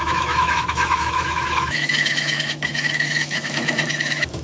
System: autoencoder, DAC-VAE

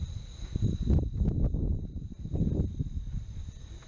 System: none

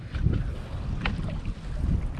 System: none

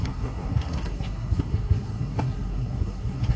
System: codec, SNAC